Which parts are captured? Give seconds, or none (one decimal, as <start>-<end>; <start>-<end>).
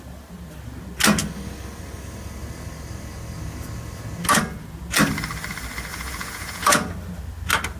0.0-5.9; 6.9-7.8